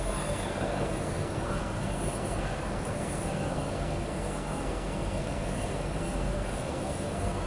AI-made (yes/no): yes